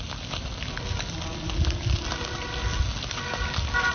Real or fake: real